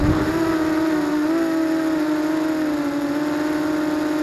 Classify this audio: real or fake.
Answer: real